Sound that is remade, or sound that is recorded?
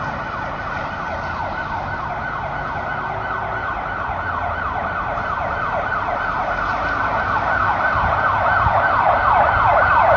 recorded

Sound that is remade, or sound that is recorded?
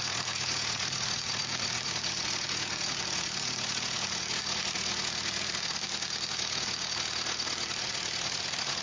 remade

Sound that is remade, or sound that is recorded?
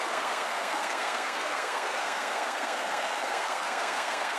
remade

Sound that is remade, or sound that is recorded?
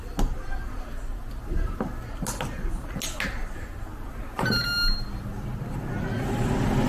recorded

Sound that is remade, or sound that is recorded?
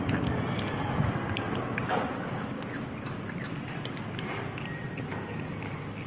recorded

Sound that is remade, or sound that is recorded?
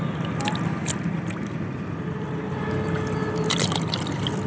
recorded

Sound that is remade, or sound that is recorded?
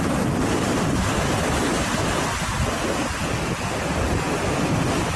recorded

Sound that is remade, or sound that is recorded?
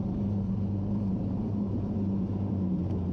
remade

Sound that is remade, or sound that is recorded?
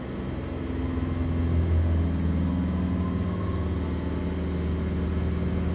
recorded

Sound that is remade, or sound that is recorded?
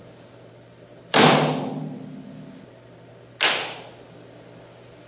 recorded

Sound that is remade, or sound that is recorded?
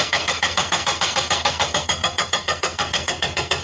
remade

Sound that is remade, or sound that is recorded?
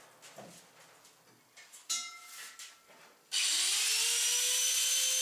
recorded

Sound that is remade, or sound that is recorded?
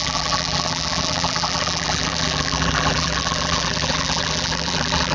remade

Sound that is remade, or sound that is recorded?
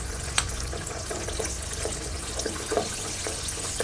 remade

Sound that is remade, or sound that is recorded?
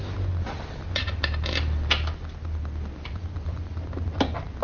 recorded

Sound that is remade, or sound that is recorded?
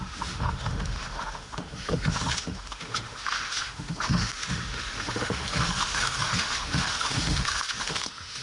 remade